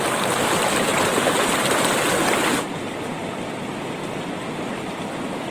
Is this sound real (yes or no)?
yes